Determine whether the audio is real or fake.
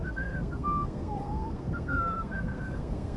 fake